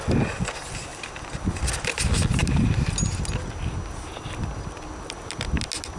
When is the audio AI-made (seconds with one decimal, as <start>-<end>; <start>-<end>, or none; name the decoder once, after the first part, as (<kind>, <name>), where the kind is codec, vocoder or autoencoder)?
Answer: none